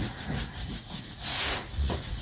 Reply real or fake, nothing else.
fake